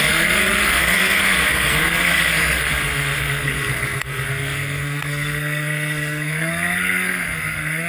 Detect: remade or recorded remade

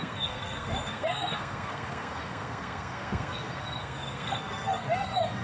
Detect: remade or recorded remade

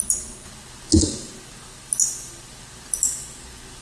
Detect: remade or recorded recorded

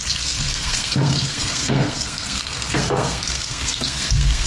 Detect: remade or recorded remade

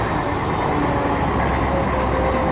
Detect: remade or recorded recorded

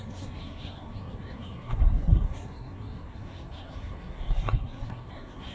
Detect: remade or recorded remade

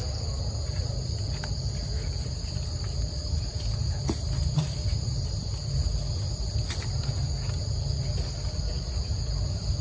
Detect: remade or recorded recorded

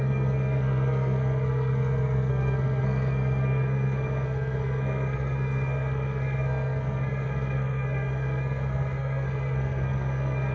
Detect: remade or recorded remade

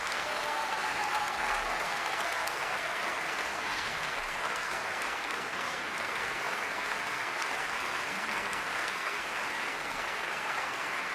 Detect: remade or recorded remade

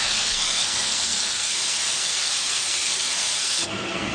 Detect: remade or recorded remade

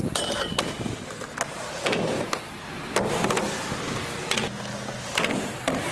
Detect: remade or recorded recorded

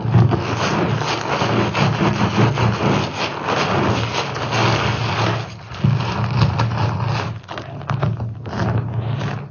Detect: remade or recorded recorded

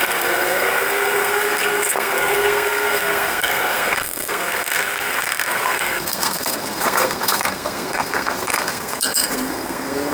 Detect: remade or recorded remade